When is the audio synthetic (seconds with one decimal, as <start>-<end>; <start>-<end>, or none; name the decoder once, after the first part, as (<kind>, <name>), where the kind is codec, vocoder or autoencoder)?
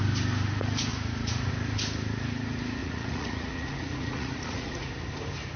0.9-1.5 (vocoder, Vocos); 2.8-4.9